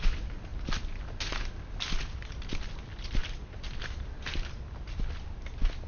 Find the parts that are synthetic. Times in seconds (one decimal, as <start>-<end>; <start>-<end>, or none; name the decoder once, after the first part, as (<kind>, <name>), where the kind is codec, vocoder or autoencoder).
none